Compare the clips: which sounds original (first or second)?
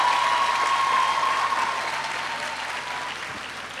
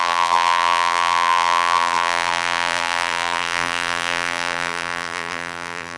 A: first